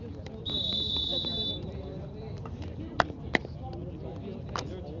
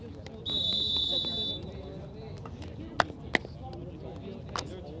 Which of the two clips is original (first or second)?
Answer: second